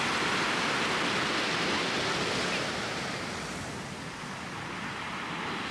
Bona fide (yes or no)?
yes